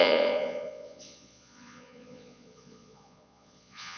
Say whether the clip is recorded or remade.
remade